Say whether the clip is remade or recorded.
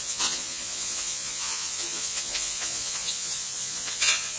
remade